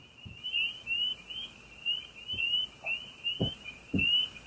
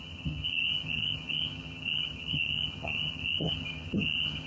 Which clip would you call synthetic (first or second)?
second